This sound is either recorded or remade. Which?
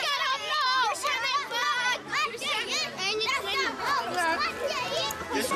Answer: recorded